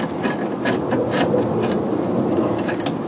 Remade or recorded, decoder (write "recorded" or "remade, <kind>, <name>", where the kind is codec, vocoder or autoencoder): recorded